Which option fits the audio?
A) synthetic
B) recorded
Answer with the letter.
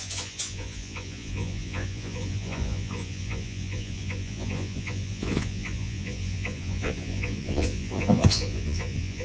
A